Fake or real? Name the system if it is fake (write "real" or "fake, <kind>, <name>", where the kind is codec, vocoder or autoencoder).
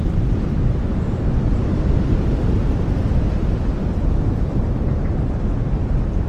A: fake, vocoder, BigVGAN v2